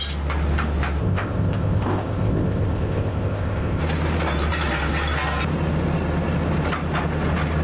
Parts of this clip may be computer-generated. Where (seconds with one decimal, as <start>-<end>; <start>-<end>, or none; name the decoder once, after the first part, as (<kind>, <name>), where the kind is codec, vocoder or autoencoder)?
1.0-3.8 (codec, ZipCodec)